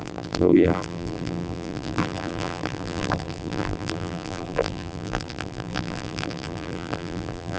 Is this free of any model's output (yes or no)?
no